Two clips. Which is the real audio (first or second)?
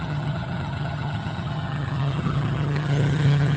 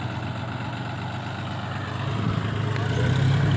second